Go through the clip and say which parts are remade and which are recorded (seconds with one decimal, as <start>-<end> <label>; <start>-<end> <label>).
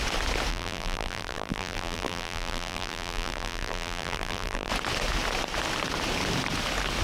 0.0-0.5 recorded; 0.5-4.7 remade; 4.7-7.0 recorded